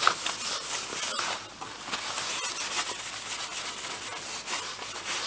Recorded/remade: recorded